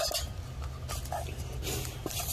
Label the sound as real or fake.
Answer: real